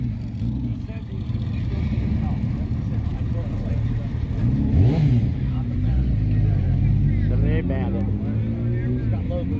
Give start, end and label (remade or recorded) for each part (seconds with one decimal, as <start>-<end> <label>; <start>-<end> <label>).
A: 0.0-9.6 recorded